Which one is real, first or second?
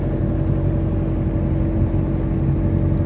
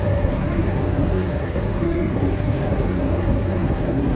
first